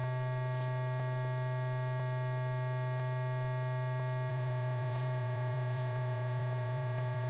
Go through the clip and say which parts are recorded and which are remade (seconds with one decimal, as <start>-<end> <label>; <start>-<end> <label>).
0.0-4.3 recorded; 4.3-7.3 remade

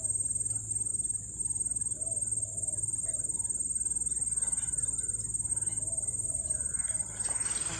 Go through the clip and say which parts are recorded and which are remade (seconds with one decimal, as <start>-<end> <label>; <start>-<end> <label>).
0.0-6.1 recorded; 6.1-6.7 remade; 6.7-7.8 recorded

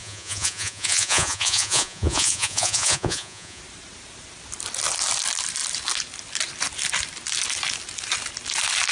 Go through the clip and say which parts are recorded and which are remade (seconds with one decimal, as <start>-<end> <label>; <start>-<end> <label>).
0.0-3.6 remade; 3.6-8.9 recorded

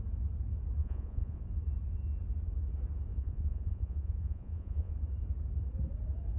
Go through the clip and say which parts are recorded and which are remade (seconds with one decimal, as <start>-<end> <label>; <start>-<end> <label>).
0.0-0.8 recorded; 0.8-1.4 remade; 1.4-3.1 recorded; 3.1-4.9 remade; 4.9-6.4 recorded